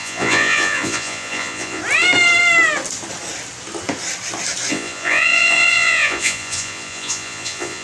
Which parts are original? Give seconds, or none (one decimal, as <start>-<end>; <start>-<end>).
1.8-4.7